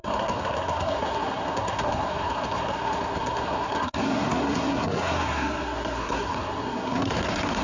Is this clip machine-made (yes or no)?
yes